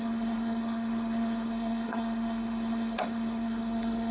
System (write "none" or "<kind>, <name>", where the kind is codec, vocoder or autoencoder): codec, SNAC